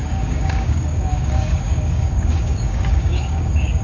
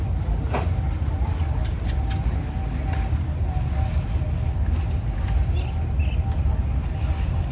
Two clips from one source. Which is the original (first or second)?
second